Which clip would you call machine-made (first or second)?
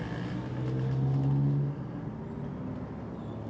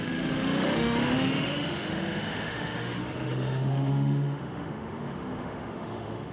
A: second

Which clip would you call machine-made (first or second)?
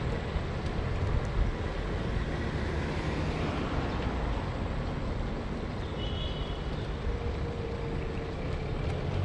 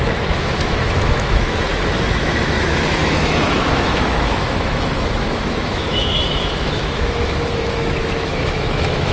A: second